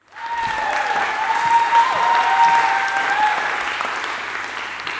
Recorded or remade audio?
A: recorded